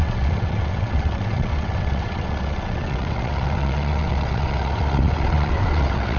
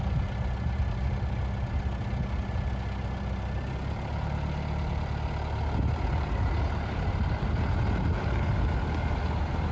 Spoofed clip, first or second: first